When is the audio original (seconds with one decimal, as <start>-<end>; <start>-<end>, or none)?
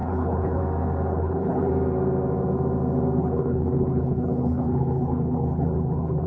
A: 0.6-1.1; 1.7-3.2